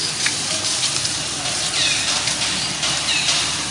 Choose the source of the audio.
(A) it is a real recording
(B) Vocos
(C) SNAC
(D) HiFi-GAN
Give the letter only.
A